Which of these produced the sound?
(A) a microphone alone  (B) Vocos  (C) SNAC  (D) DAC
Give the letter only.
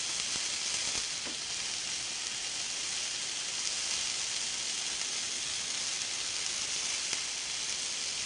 A